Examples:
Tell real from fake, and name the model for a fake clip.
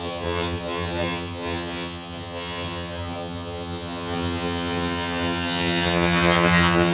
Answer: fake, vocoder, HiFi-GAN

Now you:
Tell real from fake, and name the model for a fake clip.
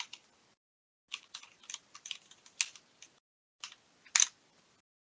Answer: real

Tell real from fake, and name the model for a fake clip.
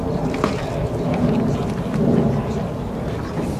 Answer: real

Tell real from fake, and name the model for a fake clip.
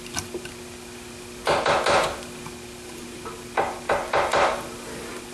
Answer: real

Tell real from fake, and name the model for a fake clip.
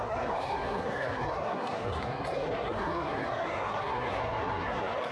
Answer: fake, codec, SNAC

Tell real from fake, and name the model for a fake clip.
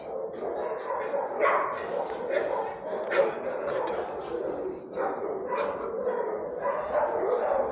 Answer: real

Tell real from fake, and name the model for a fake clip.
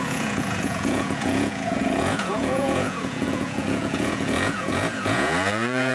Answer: fake, vocoder, Vocos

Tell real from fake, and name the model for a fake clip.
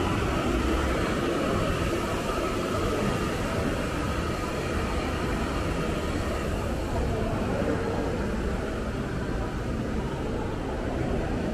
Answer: real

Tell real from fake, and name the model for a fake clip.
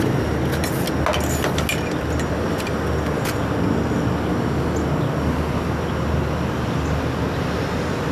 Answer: real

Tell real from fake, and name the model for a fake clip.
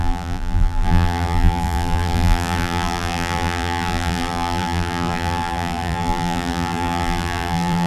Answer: fake, vocoder, BigVGAN v2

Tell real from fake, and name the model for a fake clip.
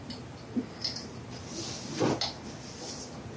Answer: real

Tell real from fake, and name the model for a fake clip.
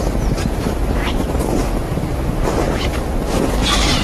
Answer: real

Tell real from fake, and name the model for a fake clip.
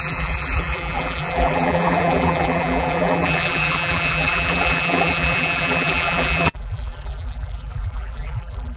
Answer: fake, vocoder, BigVGAN v2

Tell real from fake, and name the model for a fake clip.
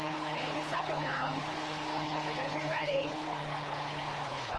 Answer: fake, codec, HILCodec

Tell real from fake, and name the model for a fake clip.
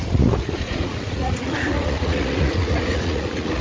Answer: fake, vocoder, Vocos